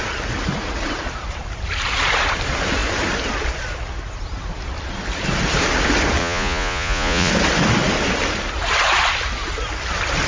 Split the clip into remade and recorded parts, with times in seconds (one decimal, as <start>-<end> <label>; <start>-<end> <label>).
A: 0.0-6.2 recorded; 6.2-7.3 remade; 7.3-10.3 recorded